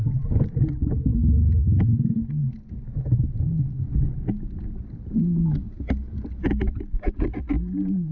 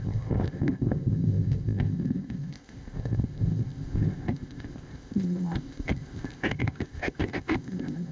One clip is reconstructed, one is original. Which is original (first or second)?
first